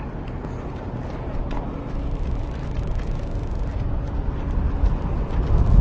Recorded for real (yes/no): yes